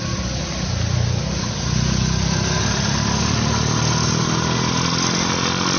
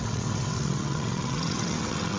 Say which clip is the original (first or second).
first